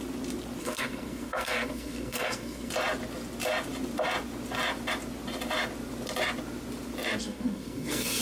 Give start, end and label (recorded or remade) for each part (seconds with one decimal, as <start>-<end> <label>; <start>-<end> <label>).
0.0-0.6 recorded; 0.6-2.7 remade; 2.7-7.2 recorded; 7.2-8.2 remade